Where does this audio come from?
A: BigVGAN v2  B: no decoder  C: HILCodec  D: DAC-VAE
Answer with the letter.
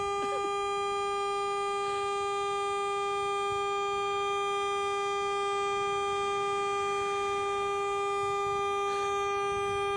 B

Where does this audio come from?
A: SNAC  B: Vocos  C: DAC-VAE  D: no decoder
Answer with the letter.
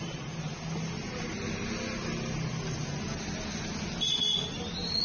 D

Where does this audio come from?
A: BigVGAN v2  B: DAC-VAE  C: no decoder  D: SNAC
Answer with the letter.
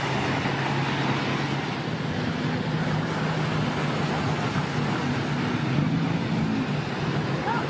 C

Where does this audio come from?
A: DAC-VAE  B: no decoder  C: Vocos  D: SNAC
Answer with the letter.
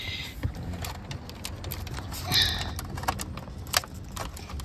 B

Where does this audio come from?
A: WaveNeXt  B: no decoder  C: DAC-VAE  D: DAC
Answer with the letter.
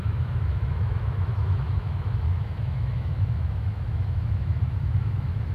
C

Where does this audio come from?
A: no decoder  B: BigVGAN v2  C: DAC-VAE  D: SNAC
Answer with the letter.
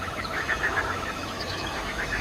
C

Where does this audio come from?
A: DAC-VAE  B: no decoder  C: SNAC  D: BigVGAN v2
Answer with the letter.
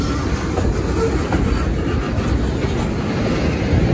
B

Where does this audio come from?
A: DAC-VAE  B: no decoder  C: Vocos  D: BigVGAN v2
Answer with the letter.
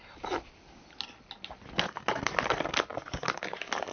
B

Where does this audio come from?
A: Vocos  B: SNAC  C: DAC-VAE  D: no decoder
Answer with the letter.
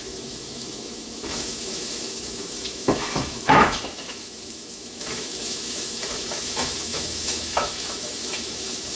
C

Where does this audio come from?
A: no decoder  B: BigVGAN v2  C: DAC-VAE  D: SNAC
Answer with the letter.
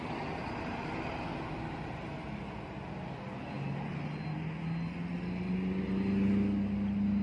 A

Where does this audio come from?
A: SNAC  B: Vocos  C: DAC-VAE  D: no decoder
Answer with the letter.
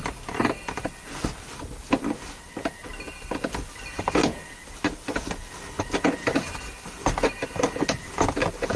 D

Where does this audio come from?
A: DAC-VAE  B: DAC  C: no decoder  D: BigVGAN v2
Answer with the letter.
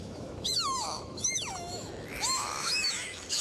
A